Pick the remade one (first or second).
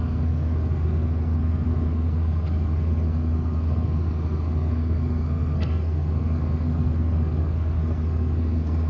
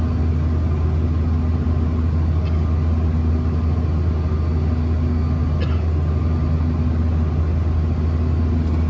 first